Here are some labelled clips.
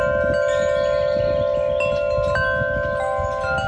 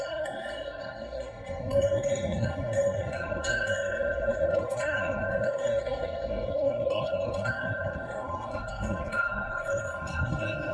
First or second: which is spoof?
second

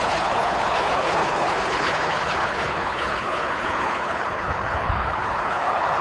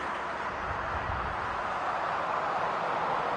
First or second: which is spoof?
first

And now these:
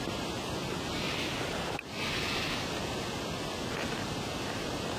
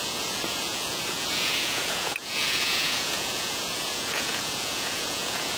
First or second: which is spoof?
second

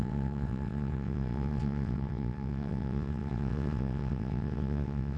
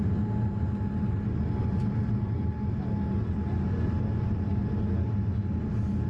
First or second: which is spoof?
first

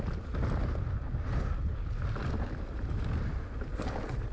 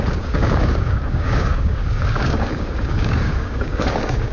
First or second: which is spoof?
second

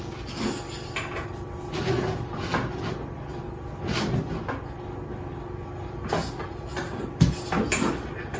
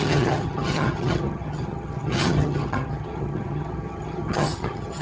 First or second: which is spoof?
second